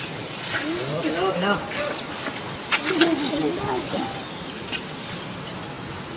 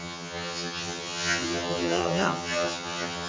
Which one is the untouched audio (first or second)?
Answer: first